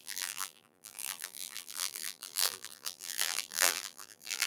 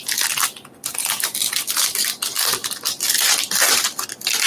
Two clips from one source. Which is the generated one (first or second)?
first